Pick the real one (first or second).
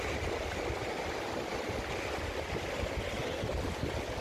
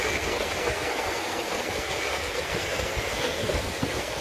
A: first